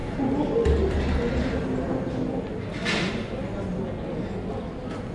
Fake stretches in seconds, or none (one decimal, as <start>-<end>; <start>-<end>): none